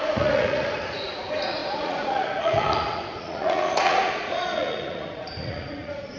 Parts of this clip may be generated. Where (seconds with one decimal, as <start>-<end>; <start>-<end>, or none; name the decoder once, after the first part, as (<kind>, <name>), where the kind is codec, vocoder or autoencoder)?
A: 0.0-6.2 (vocoder, Vocos)